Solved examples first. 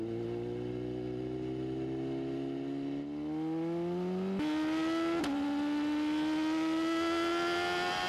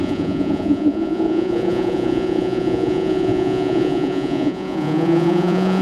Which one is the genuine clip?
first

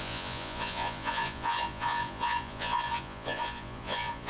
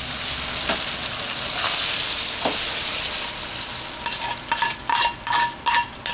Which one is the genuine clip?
second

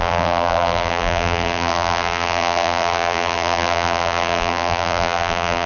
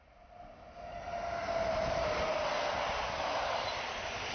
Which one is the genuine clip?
second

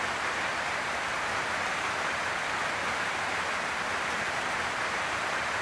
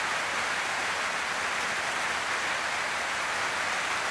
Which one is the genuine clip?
second